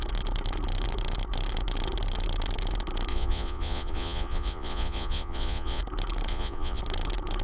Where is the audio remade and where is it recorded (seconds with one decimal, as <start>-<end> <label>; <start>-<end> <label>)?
0.0-3.1 recorded; 3.1-5.8 remade; 5.8-6.3 recorded; 6.3-6.8 remade; 6.8-7.4 recorded